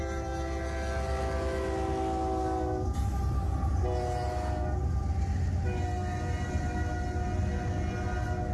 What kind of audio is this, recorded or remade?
recorded